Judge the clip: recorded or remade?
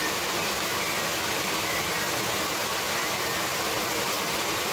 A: recorded